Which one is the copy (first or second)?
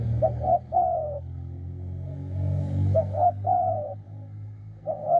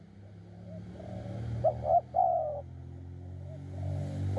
first